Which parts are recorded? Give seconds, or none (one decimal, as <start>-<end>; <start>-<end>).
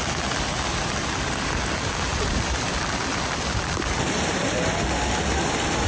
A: 0.0-2.1; 4.9-5.9